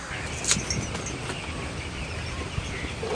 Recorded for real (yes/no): yes